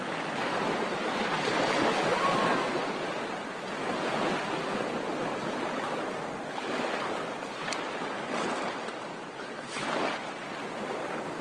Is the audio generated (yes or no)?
no